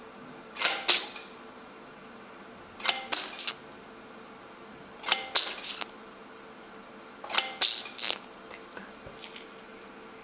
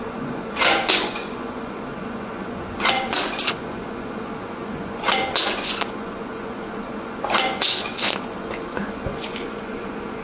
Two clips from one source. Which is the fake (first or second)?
second